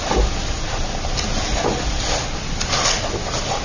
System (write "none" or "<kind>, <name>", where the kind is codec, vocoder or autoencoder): none